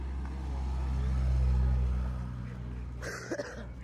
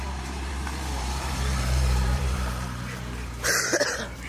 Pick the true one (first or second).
first